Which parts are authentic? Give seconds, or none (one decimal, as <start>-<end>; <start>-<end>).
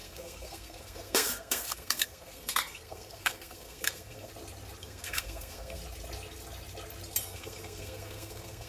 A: 4.3-4.8; 5.8-7.2